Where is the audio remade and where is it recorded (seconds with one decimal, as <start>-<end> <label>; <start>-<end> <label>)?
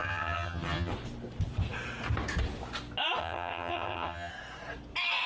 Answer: 0.0-0.9 remade; 0.9-3.2 recorded; 3.2-4.3 remade; 4.3-5.3 recorded